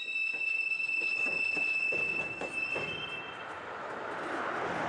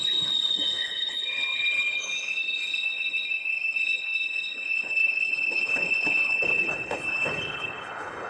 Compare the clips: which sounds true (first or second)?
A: first